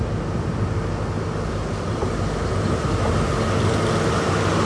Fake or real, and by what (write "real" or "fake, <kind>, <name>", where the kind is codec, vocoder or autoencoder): real